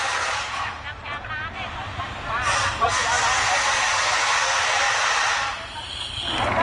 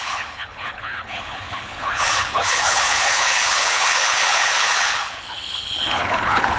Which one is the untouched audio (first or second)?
first